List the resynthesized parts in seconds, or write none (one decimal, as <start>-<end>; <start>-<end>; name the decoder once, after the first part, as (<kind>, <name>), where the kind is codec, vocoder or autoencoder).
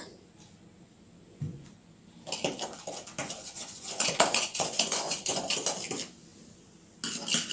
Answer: 1.3-1.9 (vocoder, Vocos); 3.2-5.5